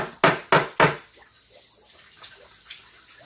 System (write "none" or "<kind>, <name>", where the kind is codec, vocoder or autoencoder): none